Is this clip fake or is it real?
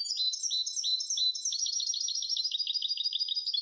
real